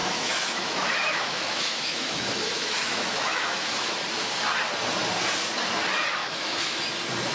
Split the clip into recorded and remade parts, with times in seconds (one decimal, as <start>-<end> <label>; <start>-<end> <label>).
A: 0.0-3.9 remade; 3.9-6.2 recorded; 6.2-6.8 remade; 6.8-7.3 recorded